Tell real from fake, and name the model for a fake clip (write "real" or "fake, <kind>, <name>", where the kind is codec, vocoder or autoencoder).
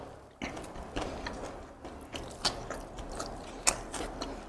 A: real